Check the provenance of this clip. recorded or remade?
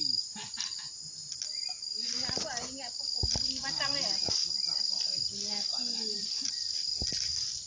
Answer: recorded